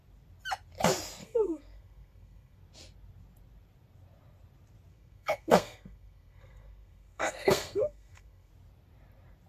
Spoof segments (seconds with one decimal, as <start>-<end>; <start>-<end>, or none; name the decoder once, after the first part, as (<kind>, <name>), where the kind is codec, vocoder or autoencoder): 1.2-2.6 (codec, SNAC); 4.9-8.5